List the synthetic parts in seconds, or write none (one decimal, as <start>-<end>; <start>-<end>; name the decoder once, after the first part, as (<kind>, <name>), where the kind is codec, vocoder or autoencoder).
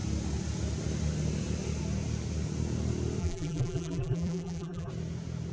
3.2-4.9 (vocoder, BigVGAN v2)